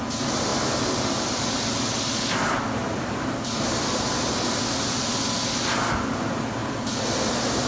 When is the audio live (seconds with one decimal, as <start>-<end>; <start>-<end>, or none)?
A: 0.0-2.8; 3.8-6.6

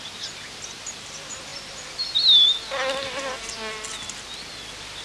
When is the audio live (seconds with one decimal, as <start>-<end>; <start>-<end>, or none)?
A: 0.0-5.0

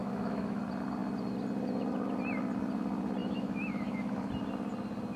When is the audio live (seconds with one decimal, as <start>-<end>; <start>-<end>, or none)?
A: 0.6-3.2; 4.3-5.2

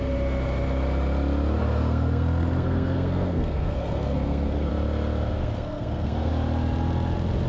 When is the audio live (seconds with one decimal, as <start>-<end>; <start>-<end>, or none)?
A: 0.0-1.6; 4.7-5.4; 6.3-7.5